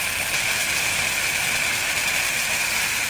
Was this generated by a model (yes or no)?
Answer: yes